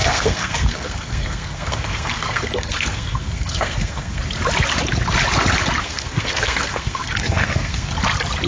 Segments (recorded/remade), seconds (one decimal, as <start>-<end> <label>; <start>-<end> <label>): 0.0-4.2 remade; 4.2-5.8 recorded; 5.8-7.9 remade; 7.9-8.5 recorded